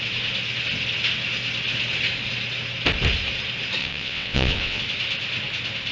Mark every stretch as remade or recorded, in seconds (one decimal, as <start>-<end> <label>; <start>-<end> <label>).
0.0-3.8 recorded; 3.8-4.8 remade; 4.8-5.9 recorded